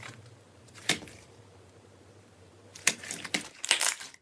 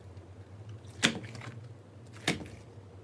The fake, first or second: first